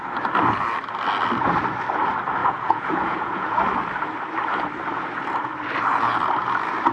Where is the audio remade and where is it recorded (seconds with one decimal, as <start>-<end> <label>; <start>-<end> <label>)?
0.0-2.4 recorded; 2.4-3.6 remade; 3.6-6.9 recorded